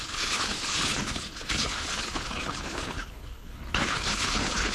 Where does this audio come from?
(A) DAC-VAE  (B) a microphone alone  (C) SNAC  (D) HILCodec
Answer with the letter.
D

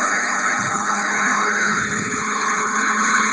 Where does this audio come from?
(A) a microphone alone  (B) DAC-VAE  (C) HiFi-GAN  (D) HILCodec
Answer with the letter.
D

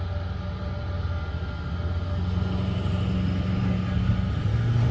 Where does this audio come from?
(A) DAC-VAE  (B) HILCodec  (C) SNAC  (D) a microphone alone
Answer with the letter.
D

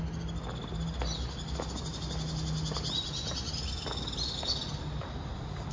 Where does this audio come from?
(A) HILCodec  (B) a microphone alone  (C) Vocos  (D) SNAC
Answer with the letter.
B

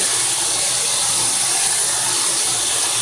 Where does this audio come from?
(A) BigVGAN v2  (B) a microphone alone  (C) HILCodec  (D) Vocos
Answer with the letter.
B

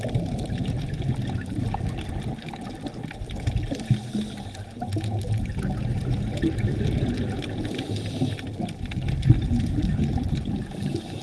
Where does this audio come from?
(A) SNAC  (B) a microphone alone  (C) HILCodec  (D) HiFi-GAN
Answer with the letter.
B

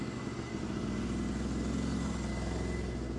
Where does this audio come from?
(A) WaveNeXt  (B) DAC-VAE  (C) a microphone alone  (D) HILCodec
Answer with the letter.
C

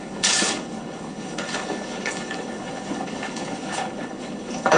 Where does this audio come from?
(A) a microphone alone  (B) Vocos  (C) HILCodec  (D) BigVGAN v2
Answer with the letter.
C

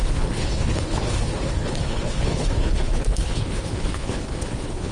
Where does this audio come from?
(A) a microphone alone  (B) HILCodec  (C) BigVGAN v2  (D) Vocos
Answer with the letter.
B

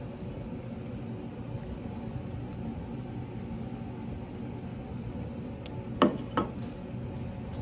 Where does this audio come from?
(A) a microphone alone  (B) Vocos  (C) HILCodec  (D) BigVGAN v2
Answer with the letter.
A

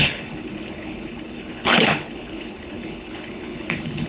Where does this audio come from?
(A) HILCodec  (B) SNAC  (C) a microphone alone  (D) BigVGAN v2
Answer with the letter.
A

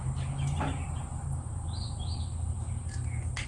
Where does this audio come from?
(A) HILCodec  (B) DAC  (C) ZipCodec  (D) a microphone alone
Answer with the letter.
D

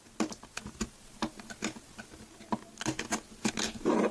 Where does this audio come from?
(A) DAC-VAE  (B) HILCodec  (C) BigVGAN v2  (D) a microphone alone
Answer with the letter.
D